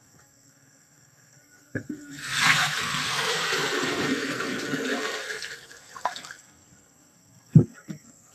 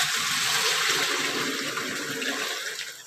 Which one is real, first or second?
second